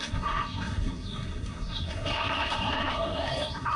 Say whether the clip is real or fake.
fake